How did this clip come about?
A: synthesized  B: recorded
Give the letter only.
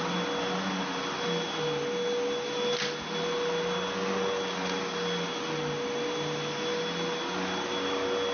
B